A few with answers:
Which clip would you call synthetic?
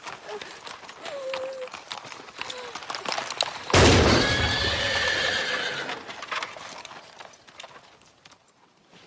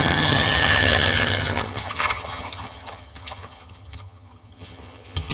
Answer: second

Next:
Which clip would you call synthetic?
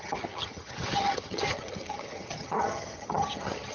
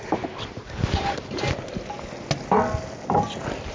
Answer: first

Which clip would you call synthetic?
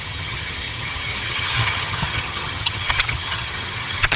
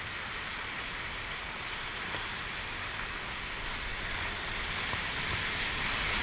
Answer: first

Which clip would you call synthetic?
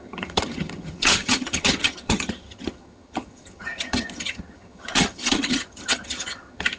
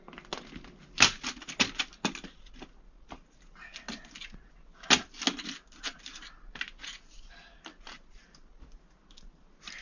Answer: first